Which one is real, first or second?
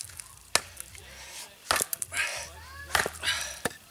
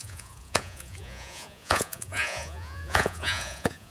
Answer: first